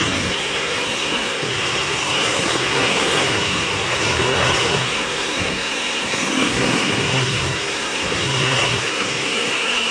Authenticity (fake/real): fake